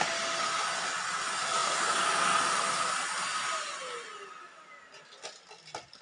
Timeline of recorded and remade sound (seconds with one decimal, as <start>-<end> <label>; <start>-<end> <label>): 0.0-6.0 recorded